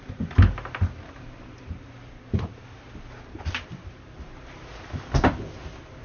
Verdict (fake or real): real